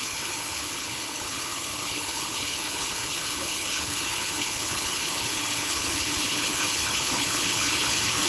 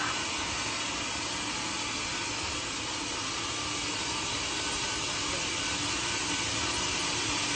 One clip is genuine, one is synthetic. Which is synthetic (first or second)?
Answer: first